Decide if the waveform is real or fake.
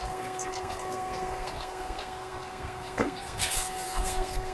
fake